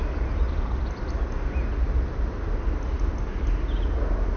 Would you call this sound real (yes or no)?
yes